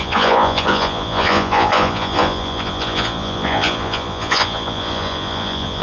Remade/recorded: remade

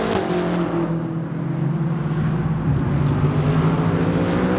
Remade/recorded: recorded